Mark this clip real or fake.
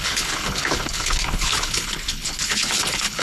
fake